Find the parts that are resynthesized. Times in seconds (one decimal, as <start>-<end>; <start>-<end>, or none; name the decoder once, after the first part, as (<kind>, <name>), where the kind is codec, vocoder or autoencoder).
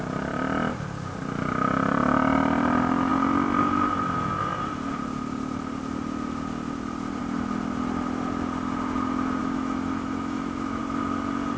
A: 9.4-10.8 (autoencoder, DAC-VAE)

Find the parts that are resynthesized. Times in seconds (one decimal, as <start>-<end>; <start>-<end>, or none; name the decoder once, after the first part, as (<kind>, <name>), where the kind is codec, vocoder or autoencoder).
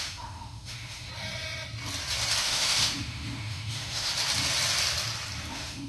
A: 0.0-1.1 (autoencoder, DAC-VAE); 2.4-4.1; 5.5-5.9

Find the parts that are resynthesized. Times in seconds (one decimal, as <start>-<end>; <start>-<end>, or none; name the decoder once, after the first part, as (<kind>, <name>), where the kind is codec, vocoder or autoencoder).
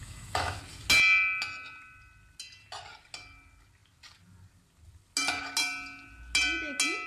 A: 0.0-0.6 (autoencoder, DAC-VAE)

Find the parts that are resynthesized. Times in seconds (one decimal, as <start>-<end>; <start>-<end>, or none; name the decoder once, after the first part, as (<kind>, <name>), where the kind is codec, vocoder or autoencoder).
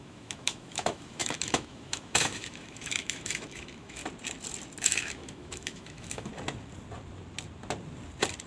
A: 0.0-4.0 (autoencoder, DAC-VAE); 4.8-6.3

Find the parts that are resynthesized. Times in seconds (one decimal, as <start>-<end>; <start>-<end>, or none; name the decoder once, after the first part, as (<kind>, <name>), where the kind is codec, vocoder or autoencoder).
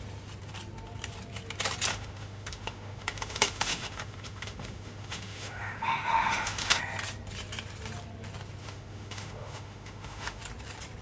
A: 1.9-6.8 (autoencoder, DAC-VAE); 8.6-10.4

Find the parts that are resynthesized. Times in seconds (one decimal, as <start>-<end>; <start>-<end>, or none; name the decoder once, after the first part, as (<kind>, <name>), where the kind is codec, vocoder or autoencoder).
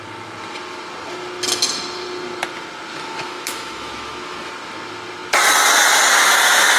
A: 2.9-4.5 (autoencoder, DAC-VAE)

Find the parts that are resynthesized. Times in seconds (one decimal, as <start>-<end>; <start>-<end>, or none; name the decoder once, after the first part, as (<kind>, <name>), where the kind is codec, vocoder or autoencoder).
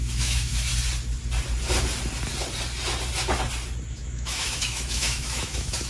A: 0.0-0.7 (autoencoder, DAC-VAE); 3.9-5.9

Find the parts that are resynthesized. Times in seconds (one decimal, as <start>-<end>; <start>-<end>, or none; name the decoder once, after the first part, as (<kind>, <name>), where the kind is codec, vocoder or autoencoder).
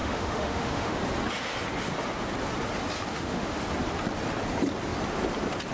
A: 0.0-1.0 (autoencoder, DAC-VAE); 3.1-3.6